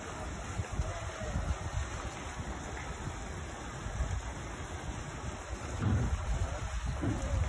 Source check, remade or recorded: recorded